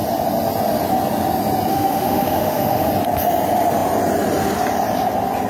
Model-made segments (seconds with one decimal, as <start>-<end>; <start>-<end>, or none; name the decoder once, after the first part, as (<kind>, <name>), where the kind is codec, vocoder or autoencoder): 1.7-2.9 (autoencoder, DAC-VAE)